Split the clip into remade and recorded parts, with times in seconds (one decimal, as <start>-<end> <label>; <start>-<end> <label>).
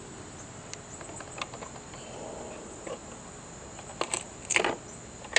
0.0-5.4 recorded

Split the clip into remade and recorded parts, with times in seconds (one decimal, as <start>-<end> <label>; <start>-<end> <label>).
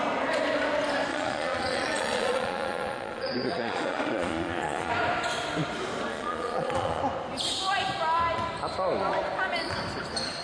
0.0-1.1 recorded; 1.1-4.9 remade; 4.9-6.1 recorded; 6.1-7.0 remade; 7.0-10.4 recorded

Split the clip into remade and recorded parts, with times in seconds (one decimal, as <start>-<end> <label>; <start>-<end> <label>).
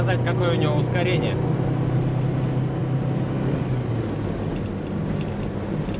0.0-6.0 recorded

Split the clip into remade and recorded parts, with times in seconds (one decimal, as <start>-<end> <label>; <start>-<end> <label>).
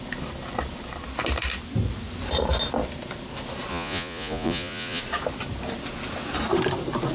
0.0-3.7 recorded; 3.7-5.0 remade; 5.0-7.1 recorded